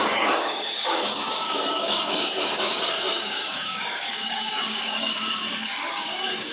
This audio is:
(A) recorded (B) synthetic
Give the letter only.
B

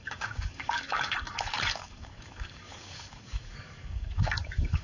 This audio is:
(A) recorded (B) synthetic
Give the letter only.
B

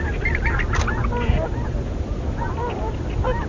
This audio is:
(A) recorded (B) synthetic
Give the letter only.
A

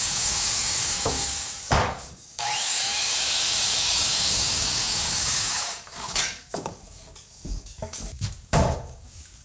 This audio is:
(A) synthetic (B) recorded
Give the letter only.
A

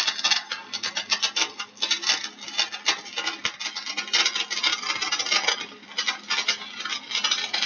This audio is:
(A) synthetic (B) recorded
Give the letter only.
B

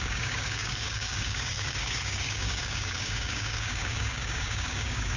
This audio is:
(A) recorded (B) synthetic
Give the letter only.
B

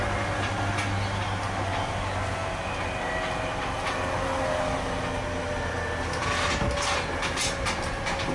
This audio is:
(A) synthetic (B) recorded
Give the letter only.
B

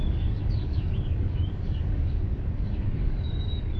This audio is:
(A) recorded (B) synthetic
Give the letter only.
B